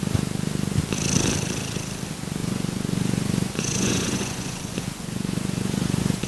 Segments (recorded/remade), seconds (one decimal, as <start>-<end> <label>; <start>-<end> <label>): 0.0-2.4 recorded; 2.4-6.3 remade